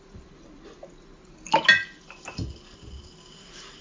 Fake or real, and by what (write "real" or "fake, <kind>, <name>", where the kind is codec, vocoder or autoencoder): real